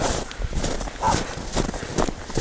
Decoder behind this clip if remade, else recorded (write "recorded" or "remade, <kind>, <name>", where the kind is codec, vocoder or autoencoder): recorded